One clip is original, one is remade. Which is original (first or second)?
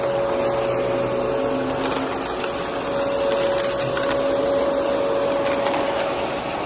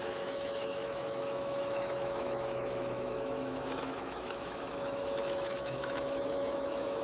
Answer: first